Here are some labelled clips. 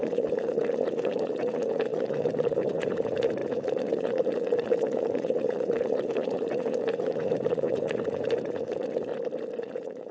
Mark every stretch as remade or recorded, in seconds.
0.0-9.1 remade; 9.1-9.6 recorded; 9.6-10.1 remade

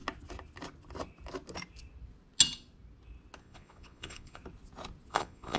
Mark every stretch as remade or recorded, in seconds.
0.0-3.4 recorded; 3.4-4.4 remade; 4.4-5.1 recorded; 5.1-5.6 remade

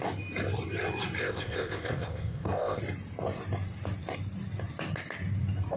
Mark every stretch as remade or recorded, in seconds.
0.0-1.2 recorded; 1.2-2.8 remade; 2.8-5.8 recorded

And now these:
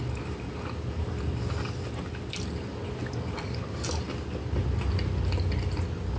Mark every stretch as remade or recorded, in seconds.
0.0-6.2 recorded